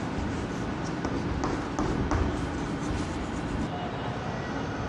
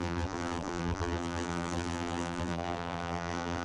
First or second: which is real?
first